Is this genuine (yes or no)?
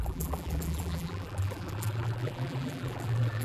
no